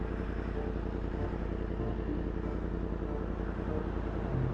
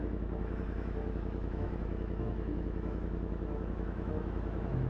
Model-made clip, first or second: second